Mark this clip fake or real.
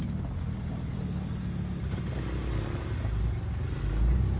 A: real